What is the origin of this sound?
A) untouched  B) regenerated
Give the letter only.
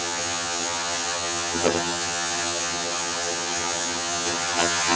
B